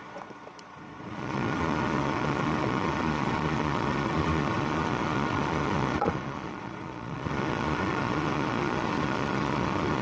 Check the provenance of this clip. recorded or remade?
remade